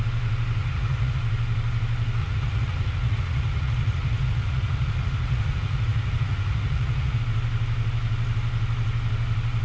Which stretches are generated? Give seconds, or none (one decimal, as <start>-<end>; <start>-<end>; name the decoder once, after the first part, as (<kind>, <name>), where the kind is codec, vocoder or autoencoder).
0.6-1.2 (vocoder, Vocos); 2.2-7.2